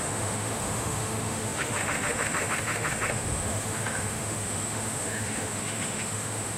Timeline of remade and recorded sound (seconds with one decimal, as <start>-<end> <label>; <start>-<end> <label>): 0.0-6.6 remade